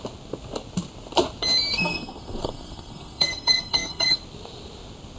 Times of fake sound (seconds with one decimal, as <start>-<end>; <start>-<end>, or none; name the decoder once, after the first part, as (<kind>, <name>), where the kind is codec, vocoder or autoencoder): 1.7-4.2 (codec, SNAC)